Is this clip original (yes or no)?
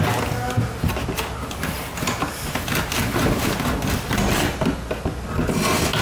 yes